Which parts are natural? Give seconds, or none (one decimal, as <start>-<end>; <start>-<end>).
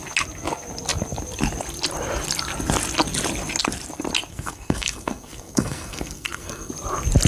0.0-4.3; 6.7-7.3